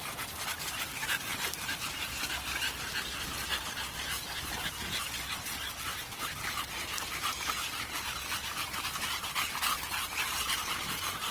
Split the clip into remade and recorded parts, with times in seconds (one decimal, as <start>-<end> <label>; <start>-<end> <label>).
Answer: 0.0-1.0 recorded; 1.0-4.4 remade; 4.4-5.9 recorded; 5.9-11.3 remade